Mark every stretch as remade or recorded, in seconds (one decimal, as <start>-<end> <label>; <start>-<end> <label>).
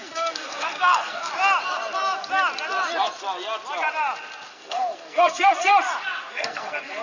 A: 0.0-1.3 remade; 1.3-4.5 recorded; 4.5-5.7 remade; 5.7-6.3 recorded; 6.3-7.0 remade